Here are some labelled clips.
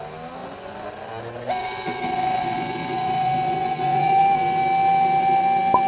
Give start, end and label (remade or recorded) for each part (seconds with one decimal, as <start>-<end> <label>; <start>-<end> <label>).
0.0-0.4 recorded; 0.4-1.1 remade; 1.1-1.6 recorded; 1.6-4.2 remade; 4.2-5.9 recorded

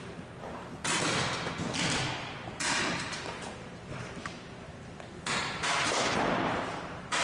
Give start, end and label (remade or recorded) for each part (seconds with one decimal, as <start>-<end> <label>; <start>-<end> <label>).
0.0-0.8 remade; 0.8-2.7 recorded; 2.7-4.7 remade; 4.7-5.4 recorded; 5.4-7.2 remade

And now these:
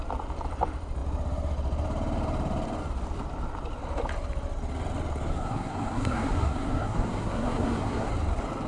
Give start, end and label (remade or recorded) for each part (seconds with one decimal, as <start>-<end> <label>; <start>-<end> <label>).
0.0-5.3 recorded; 5.3-8.1 remade; 8.1-8.7 recorded

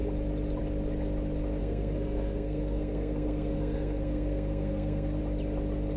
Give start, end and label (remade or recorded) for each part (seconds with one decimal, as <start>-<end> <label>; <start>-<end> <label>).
0.0-1.6 recorded; 1.6-5.2 remade; 5.2-6.0 recorded

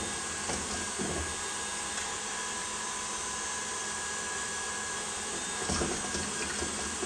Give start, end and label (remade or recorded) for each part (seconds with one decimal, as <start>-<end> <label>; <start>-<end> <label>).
0.0-1.7 recorded; 1.7-5.5 remade; 5.5-7.1 recorded